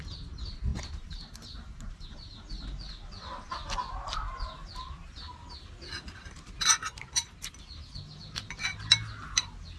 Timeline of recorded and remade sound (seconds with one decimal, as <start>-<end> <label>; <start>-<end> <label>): 0.0-0.7 recorded; 0.7-2.4 remade; 2.4-9.8 recorded